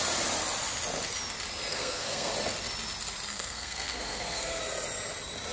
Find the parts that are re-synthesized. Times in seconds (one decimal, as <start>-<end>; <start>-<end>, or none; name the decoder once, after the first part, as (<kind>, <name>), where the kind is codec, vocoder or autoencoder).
1.7-2.3 (codec, SNAC); 3.3-4.6